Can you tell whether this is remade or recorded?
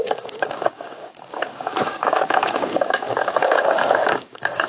remade